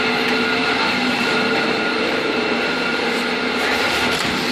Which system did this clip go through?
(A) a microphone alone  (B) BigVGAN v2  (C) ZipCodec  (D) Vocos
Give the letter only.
B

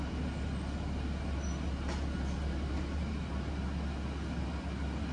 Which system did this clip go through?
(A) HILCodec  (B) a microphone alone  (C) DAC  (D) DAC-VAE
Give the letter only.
B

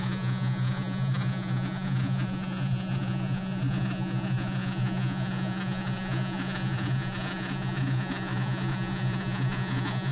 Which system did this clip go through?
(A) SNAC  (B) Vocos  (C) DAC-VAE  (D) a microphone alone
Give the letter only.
B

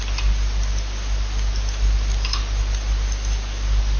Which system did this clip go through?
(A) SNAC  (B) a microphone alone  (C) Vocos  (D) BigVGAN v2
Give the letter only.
B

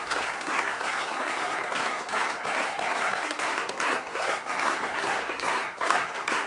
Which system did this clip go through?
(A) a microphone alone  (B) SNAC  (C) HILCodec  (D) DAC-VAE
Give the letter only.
B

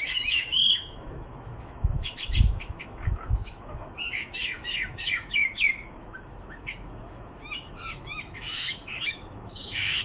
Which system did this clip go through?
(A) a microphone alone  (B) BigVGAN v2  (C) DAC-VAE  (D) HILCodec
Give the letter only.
C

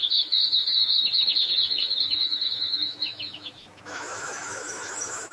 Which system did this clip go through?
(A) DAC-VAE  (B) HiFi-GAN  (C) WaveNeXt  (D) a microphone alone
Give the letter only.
A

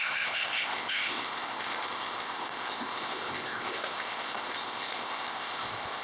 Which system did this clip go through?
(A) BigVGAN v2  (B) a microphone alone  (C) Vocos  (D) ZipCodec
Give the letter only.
D